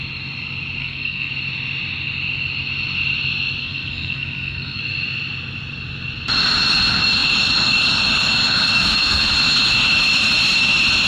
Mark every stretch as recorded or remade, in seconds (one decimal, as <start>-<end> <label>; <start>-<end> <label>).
0.0-0.8 recorded; 0.8-1.3 remade; 1.3-3.6 recorded; 3.6-4.8 remade; 4.8-8.8 recorded; 8.8-9.3 remade; 9.3-11.1 recorded